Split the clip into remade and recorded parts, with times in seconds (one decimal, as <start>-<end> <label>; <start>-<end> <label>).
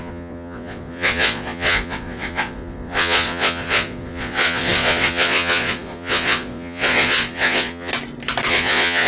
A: 0.0-7.9 remade; 7.9-8.5 recorded; 8.5-9.1 remade